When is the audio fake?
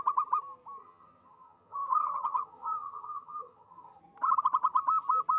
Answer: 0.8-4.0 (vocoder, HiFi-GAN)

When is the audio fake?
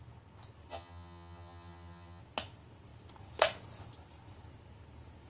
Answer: 0.7-2.2 (vocoder, HiFi-GAN)